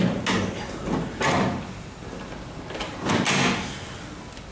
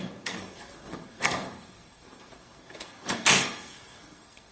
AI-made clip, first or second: second